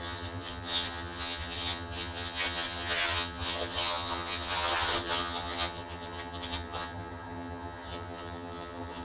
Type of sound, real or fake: fake